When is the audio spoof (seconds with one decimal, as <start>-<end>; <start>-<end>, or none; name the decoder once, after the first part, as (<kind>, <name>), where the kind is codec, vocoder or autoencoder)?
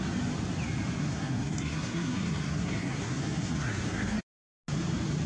1.0-4.2 (codec, SNAC)